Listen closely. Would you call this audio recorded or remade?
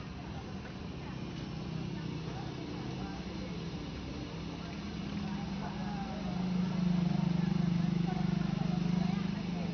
recorded